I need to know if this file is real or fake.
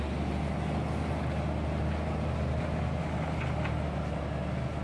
real